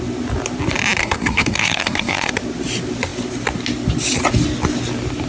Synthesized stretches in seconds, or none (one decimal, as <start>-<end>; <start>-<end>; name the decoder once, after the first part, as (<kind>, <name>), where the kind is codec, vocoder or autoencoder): 1.0-2.3 (codec, SNAC)

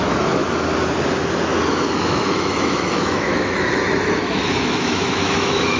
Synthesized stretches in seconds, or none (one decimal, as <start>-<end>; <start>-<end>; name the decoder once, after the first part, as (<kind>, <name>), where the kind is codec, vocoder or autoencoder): 0.0-0.4 (autoencoder, DAC-VAE); 1.9-5.8

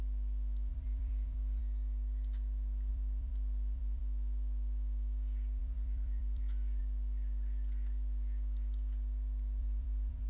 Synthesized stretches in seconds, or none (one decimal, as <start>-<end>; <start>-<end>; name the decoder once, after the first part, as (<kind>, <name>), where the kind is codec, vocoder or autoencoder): 0.7-1.6 (vocoder, BigVGAN v2); 2.9-4.0; 5.6-6.8; 9.6-10.3

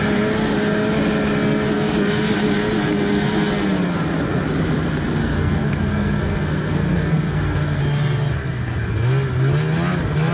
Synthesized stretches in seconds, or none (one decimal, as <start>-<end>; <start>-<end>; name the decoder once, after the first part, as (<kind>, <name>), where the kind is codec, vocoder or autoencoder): 5.2-7.8 (codec, SNAC)

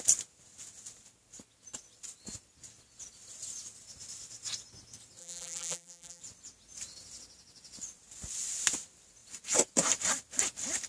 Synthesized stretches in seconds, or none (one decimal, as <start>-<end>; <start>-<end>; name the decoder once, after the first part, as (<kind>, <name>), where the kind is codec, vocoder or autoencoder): 5.2-6.2 (vocoder, BigVGAN v2)

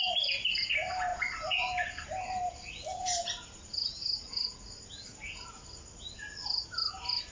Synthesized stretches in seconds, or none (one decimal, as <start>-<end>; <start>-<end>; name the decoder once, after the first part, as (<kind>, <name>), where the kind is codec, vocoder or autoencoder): none

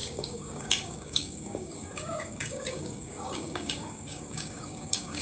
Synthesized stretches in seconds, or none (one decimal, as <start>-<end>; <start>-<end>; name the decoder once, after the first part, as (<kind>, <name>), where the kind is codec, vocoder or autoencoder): 0.0-5.2 (codec, DAC)